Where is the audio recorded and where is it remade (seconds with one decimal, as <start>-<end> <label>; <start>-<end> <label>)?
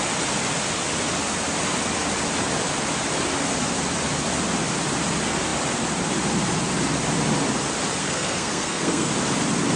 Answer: 0.0-8.0 recorded; 8.0-9.1 remade; 9.1-9.8 recorded